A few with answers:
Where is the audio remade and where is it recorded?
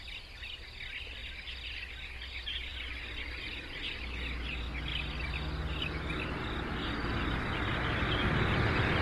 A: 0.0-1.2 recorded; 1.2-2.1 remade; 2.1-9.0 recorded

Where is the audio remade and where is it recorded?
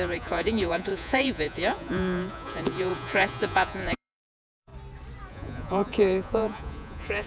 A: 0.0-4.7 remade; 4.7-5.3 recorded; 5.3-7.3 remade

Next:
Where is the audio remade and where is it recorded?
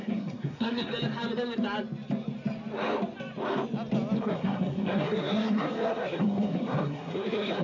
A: 0.0-0.9 remade; 0.9-4.2 recorded; 4.2-7.6 remade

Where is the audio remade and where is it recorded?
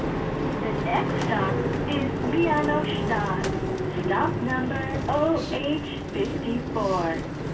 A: 0.0-0.9 recorded; 0.9-1.5 remade; 1.5-6.3 recorded; 6.3-7.5 remade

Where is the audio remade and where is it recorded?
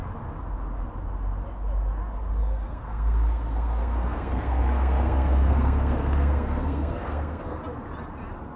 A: 0.0-2.4 recorded; 2.4-7.6 remade; 7.6-8.6 recorded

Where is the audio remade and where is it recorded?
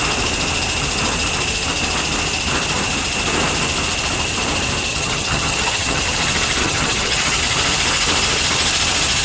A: 0.0-4.9 recorded; 4.9-6.0 remade; 6.0-6.6 recorded; 6.6-7.4 remade; 7.4-9.2 recorded